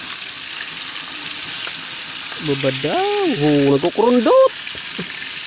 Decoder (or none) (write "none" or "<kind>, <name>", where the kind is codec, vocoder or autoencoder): none